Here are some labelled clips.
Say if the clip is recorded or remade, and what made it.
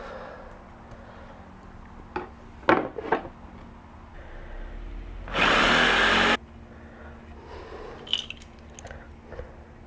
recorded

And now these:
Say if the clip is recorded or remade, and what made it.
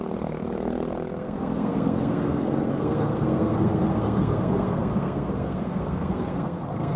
remade, codec, SNAC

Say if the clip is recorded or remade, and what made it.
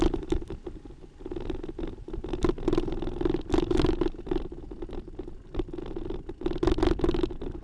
recorded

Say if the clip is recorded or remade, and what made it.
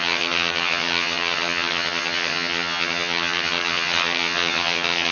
remade, vocoder, HiFi-GAN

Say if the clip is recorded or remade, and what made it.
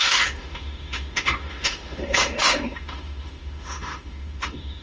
remade, autoencoder, DAC-VAE